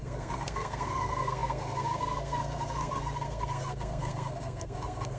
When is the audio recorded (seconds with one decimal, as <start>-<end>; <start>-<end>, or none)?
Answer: none